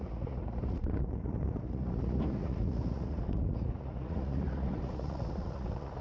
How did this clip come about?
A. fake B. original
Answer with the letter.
A